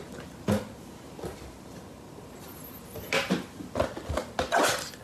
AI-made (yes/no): no